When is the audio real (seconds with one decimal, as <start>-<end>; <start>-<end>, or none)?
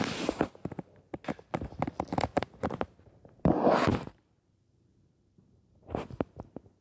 0.0-2.3; 3.5-3.9; 5.9-6.8